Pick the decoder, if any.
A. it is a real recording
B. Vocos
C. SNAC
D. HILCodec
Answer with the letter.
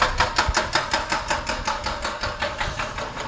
A